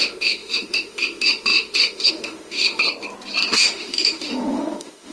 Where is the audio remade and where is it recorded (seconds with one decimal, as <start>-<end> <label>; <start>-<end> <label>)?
0.0-2.8 remade; 2.8-3.5 recorded; 3.5-5.1 remade